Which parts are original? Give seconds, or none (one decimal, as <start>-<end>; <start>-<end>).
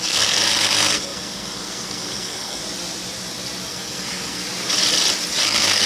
2.6-3.7; 4.4-5.4